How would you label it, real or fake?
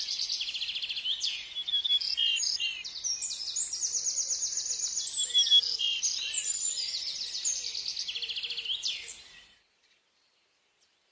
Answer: real